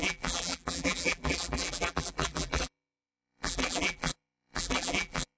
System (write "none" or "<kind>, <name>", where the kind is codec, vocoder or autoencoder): vocoder, BigVGAN v2